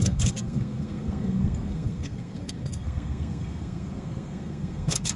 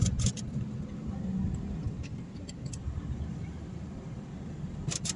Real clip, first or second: second